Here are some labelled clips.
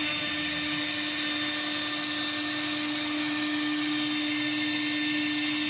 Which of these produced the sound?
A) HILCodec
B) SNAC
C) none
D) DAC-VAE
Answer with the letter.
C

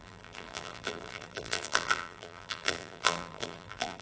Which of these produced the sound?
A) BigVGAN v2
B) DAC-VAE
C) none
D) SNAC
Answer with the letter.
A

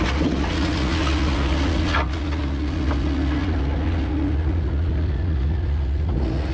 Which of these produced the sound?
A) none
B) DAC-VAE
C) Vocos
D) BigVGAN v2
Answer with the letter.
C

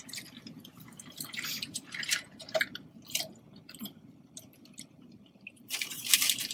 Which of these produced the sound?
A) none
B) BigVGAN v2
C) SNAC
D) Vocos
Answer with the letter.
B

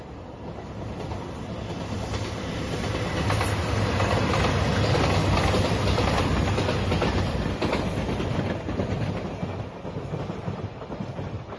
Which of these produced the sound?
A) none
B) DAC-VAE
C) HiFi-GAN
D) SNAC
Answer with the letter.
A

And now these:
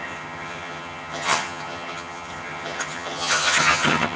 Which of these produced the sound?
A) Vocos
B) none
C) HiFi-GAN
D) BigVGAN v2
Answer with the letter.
C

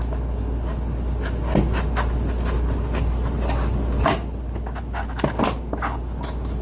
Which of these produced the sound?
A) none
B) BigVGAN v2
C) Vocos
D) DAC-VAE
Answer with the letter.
A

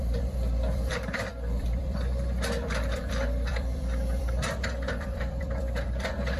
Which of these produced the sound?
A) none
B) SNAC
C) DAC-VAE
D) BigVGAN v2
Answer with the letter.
D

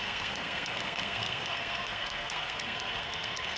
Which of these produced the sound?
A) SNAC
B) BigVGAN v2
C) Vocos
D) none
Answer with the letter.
A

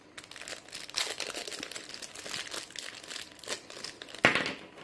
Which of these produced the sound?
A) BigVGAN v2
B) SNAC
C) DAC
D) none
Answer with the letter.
D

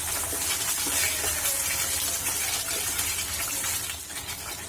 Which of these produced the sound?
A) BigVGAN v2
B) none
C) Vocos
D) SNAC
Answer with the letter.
B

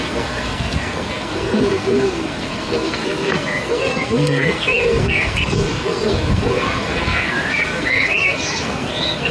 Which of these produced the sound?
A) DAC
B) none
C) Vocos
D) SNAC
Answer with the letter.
D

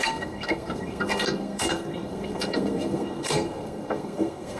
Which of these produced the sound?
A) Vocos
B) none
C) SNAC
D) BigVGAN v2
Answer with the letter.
C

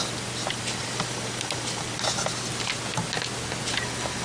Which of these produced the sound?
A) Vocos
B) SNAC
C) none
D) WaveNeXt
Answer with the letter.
C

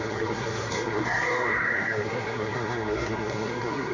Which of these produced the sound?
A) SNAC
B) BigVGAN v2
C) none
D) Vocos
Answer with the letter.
A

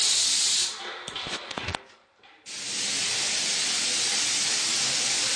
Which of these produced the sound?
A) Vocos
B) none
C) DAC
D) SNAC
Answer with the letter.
B